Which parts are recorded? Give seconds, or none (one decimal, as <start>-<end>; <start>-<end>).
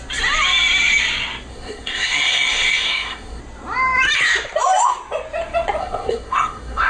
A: 0.0-1.5; 3.4-5.8